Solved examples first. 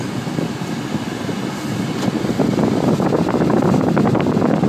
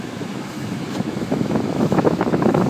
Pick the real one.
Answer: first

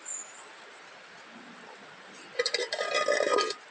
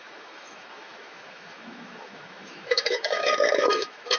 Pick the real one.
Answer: first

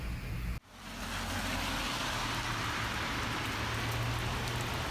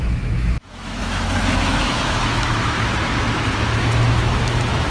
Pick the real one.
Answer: first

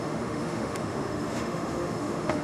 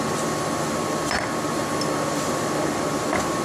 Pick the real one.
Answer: second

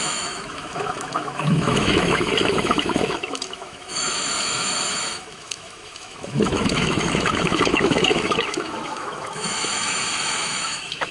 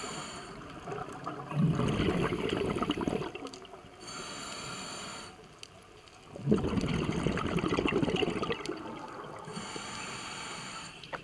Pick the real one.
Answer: second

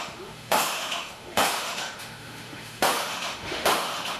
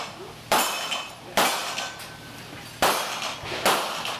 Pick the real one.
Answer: second